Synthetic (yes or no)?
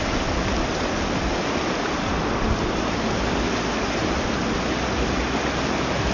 no